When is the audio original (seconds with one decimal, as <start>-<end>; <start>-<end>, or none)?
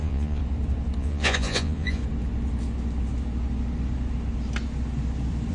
0.4-1.0; 2.0-5.5